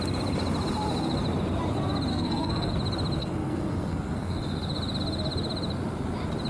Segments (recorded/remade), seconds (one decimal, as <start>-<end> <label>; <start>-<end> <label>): 0.0-2.1 recorded; 2.1-2.7 remade; 2.7-3.2 recorded; 3.2-4.4 remade; 4.4-6.5 recorded